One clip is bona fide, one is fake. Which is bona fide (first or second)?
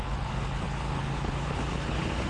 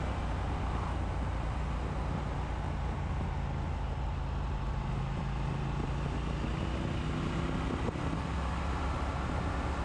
second